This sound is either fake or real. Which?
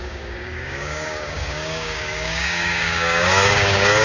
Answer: fake